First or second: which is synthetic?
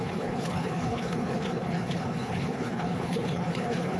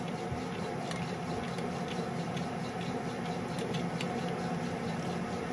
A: first